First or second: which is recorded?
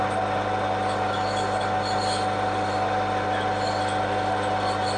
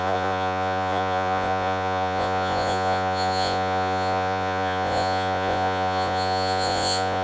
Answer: first